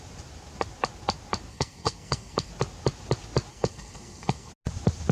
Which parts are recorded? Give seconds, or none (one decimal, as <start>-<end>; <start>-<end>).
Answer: 0.0-1.5; 2.5-3.5; 4.5-5.1